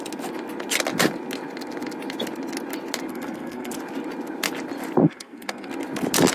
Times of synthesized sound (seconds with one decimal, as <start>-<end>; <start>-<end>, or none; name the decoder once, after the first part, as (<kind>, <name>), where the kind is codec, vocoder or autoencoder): 3.1-3.7 (codec, SNAC); 5.0-5.7